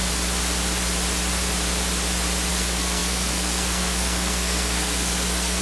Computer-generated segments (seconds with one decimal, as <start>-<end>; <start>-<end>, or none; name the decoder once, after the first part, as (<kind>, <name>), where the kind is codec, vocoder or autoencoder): 2.5-5.6 (codec, SNAC)